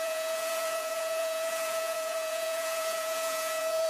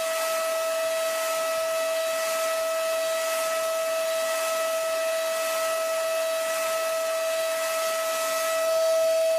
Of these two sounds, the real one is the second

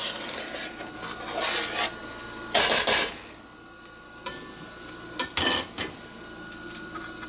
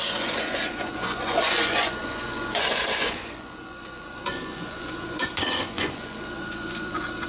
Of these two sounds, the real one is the first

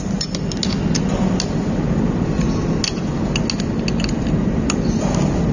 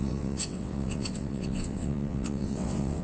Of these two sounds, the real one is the first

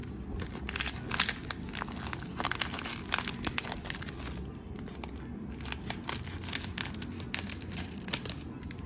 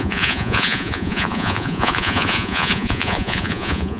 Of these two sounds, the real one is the first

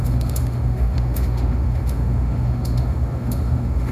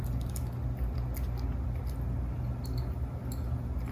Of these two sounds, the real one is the second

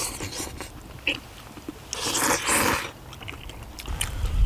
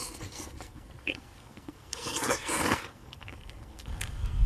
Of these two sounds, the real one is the first